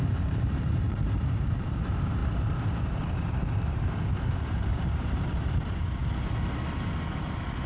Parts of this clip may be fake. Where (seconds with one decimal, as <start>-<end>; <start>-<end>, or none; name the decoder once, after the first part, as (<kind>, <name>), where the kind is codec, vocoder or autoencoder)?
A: 0.0-6.0 (vocoder, BigVGAN v2); 7.2-7.7